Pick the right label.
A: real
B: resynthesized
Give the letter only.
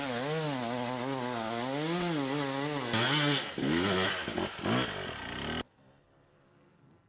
A